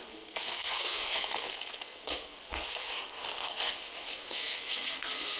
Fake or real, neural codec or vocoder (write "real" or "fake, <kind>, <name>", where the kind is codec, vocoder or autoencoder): fake, codec, SNAC